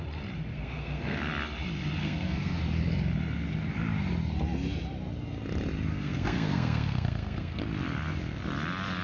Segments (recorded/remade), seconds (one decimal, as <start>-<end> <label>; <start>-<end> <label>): 0.0-0.5 recorded; 0.5-1.3 remade; 1.3-2.0 recorded; 2.0-2.6 remade; 2.6-5.9 recorded; 5.9-7.6 remade; 7.6-9.0 recorded